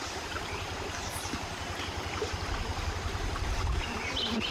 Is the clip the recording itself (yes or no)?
yes